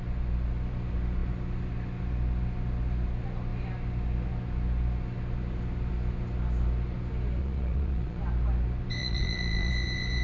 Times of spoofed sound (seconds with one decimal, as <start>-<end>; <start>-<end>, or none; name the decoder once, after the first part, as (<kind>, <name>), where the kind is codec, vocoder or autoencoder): 7.4-8.2 (vocoder, Vocos); 9.0-9.7